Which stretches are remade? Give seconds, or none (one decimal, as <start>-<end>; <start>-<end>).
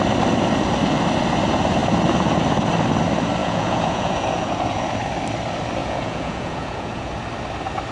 3.4-4.8; 5.8-7.1